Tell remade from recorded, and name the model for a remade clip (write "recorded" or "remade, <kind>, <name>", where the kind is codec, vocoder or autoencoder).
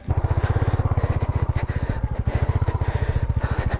recorded